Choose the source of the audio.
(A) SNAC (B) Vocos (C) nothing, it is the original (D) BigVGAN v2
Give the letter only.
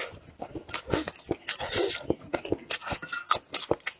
C